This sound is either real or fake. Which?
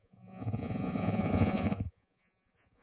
fake